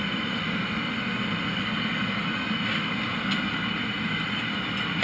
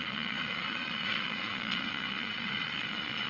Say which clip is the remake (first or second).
second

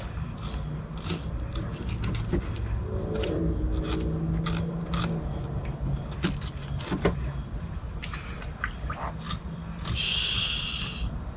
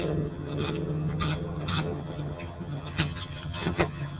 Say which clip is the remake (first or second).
second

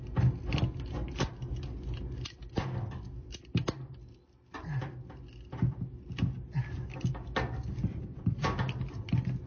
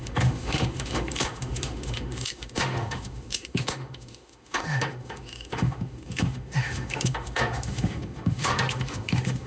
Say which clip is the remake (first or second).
second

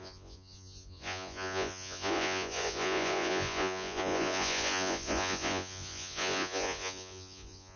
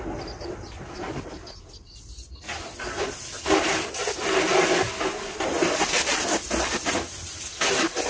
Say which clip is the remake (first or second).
first